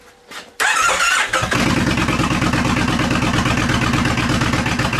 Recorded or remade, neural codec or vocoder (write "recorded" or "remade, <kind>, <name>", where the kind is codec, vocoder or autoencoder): recorded